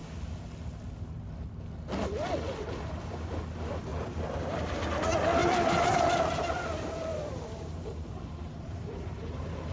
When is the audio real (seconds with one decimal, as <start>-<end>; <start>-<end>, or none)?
0.0-3.9; 4.8-7.1